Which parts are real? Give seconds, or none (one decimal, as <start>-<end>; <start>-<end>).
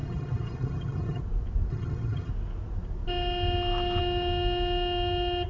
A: 1.2-1.7; 2.3-5.5